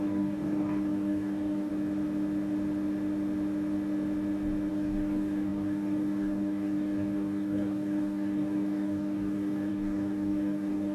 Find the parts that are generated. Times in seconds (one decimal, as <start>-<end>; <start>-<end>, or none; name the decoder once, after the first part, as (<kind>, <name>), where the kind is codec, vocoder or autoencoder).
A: 0.0-1.7 (codec, DAC); 4.7-10.9